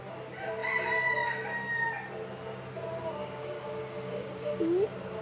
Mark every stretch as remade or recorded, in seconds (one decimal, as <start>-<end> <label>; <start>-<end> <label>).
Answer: 0.0-3.2 recorded; 3.2-4.6 remade; 4.6-5.2 recorded